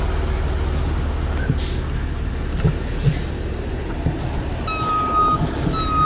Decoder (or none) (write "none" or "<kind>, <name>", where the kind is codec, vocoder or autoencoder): none